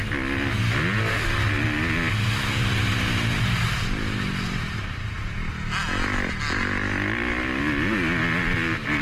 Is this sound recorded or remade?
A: recorded